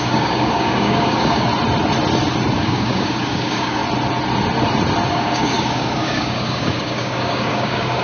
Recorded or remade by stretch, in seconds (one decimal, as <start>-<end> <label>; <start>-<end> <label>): 0.0-1.5 remade; 1.5-2.6 recorded; 2.6-3.8 remade; 3.8-5.1 recorded; 5.1-8.0 remade